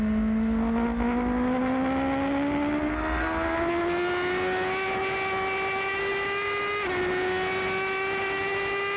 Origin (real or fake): real